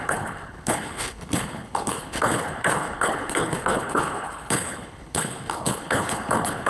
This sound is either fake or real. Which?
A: fake